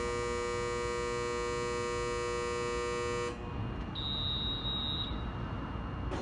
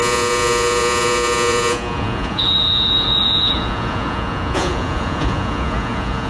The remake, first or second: second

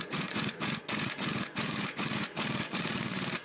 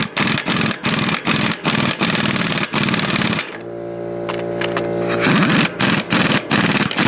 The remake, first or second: first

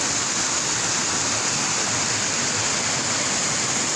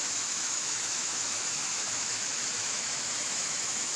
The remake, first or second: second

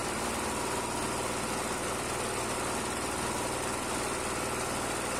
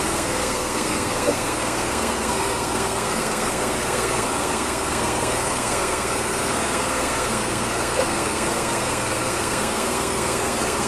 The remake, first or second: second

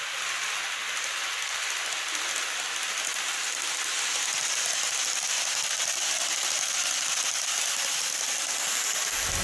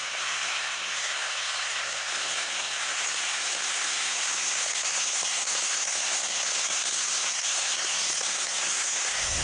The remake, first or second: second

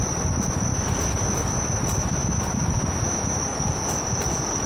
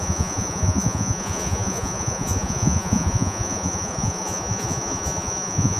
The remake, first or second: second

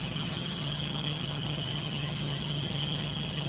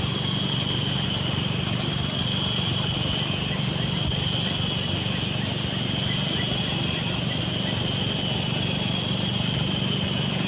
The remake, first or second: first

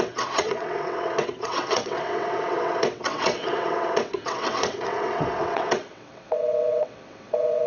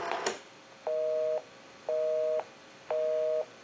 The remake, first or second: first